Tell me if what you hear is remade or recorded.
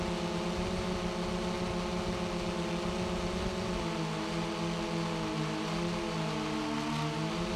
recorded